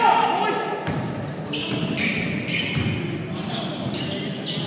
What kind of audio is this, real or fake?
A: real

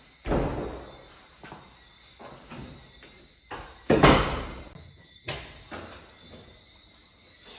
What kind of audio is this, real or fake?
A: real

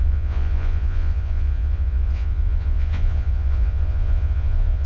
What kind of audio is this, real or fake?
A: fake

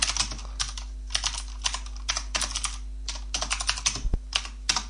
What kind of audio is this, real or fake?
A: real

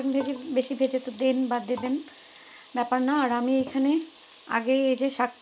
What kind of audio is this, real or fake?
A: real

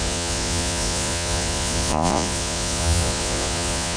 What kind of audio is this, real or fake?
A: fake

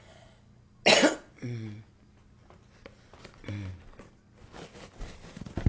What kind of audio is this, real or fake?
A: real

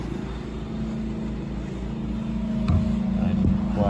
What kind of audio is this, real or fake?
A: real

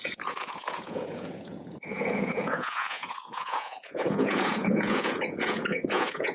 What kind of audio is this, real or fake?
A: fake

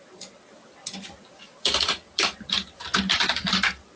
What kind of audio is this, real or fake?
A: real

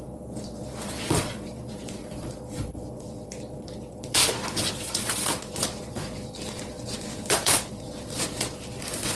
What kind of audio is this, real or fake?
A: fake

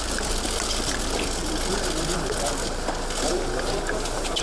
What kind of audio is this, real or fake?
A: real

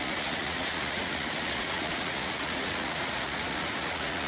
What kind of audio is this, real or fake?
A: fake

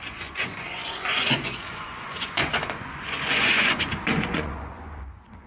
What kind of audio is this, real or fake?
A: fake